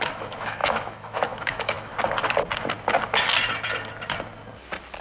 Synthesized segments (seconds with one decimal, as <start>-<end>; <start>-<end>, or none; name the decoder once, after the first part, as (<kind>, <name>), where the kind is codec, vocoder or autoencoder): 0.0-1.9 (autoencoder, DAC-VAE)